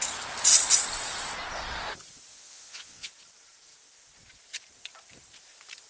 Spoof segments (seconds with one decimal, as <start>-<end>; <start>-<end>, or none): 2.3-3.1